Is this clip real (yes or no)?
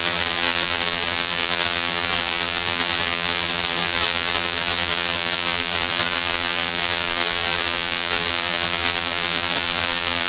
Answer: no